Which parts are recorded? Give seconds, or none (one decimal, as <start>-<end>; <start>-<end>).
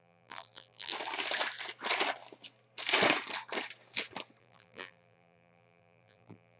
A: 0.9-4.4